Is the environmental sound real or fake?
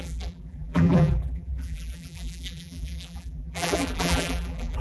fake